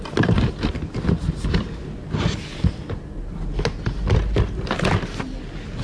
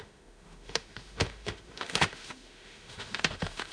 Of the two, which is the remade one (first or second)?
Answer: second